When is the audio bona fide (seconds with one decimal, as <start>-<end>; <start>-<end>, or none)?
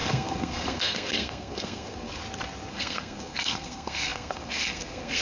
2.2-2.7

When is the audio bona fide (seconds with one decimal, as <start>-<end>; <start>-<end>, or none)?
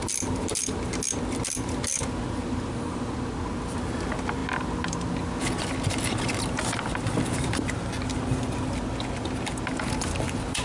0.0-10.6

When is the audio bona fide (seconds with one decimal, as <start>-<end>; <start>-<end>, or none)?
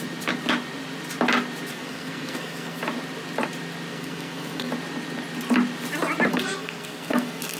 0.0-1.7; 2.8-3.9; 4.7-6.3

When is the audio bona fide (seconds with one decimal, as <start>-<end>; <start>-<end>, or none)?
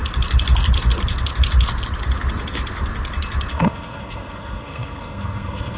0.0-3.5